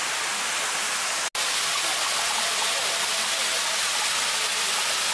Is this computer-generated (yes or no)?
no